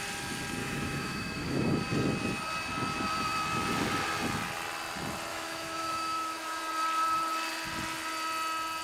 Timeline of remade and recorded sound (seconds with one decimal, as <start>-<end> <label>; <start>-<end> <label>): 0.0-0.6 recorded; 0.6-1.8 remade; 1.8-5.3 recorded; 5.3-6.6 remade; 6.6-8.8 recorded